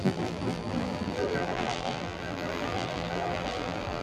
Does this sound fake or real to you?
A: fake